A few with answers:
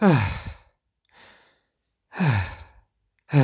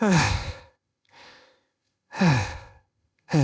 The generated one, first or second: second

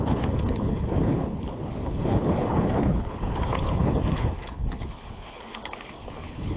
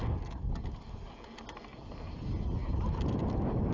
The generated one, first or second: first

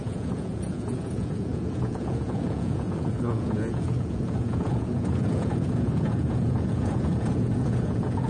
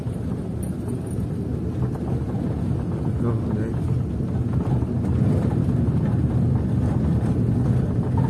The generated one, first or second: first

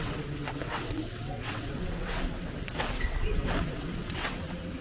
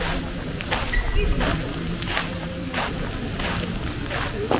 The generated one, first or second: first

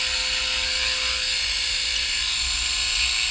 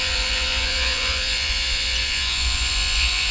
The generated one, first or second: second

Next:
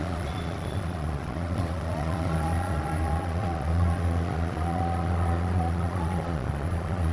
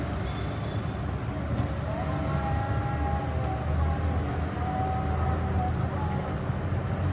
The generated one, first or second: first